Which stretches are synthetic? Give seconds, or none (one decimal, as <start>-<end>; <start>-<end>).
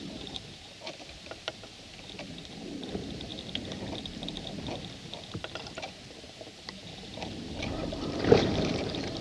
0.0-3.3; 5.3-9.2